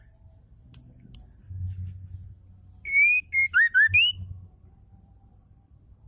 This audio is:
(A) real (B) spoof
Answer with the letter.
A